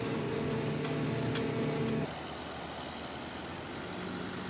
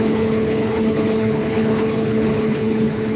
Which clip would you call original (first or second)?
first